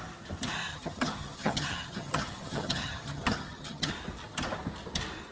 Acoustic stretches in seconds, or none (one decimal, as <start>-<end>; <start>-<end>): 0.0-0.7; 3.9-5.3